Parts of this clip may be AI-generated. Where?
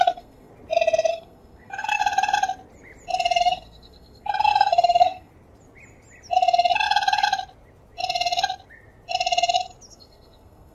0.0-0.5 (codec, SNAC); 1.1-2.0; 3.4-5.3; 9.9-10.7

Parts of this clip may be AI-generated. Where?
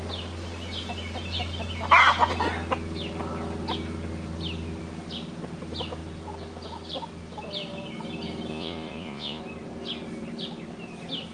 8.5-9.4 (vocoder, Vocos)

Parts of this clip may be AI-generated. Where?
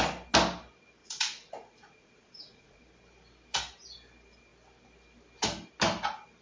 1.0-2.8 (vocoder, Vocos)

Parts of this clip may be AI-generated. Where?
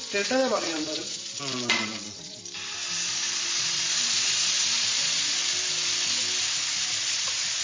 0.0-2.4 (vocoder, Vocos); 3.1-5.4; 7.0-7.6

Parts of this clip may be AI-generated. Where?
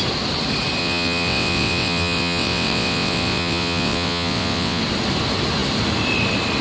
0.8-4.8 (vocoder, WaveNeXt)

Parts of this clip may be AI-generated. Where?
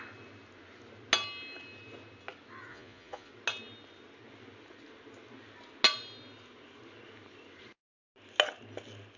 2.7-3.3 (vocoder, Vocos)